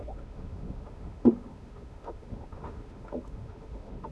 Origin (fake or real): fake